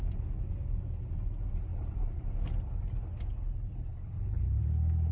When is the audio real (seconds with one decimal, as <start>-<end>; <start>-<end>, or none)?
0.0-3.9; 4.6-5.1